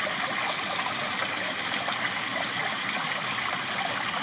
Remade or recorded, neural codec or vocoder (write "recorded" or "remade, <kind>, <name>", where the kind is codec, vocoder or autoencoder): recorded